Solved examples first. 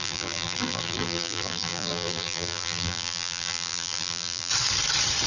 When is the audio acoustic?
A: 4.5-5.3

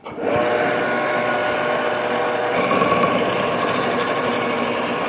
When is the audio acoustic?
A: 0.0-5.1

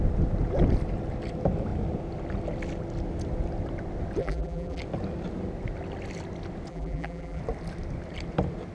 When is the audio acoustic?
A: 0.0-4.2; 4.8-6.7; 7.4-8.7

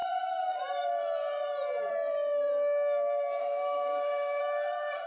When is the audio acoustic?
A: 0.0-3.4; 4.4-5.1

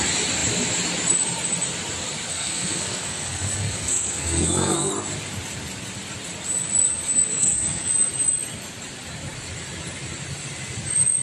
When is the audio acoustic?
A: 0.0-2.3; 4.9-7.3; 7.9-11.2